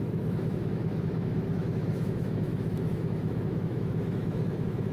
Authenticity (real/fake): fake